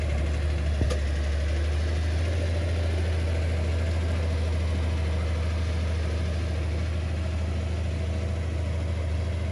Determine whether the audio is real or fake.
real